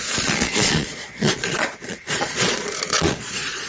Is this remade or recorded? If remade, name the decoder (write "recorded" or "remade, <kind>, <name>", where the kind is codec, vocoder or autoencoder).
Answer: remade, vocoder, Vocos